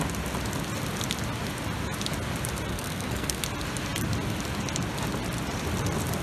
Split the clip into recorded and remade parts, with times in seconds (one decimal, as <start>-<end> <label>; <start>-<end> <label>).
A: 0.0-2.7 recorded; 2.7-3.4 remade; 3.4-6.2 recorded